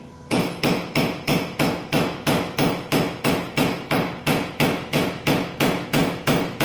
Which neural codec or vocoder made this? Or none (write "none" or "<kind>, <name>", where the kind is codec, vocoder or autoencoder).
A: autoencoder, DAC-VAE